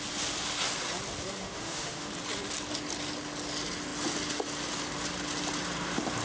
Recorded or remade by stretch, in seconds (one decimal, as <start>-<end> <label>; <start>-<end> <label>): 0.0-1.4 recorded; 1.4-2.1 remade; 2.1-6.2 recorded